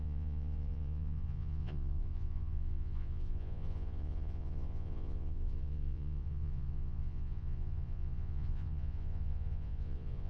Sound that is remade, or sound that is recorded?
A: remade